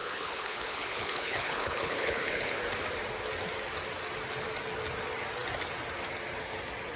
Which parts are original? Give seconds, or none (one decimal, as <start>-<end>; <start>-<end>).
2.6-7.0